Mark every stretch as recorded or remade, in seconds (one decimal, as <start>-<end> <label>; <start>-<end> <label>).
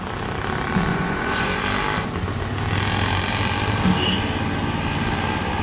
0.0-0.9 recorded; 0.9-1.6 remade; 1.6-5.6 recorded